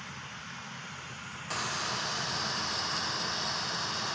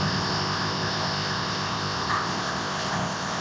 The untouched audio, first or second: first